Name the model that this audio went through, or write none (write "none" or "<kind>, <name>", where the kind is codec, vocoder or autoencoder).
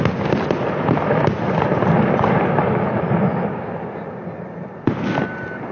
none